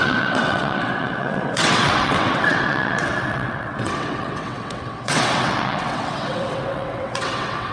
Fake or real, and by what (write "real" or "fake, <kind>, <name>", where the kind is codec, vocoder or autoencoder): fake, vocoder, WaveNeXt